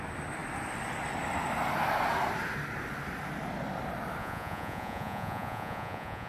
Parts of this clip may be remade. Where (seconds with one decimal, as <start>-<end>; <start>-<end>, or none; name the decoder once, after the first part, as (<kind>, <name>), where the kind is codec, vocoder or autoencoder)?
4.2-6.3 (vocoder, Vocos)